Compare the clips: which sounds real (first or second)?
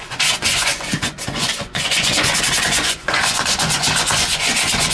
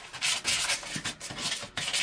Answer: second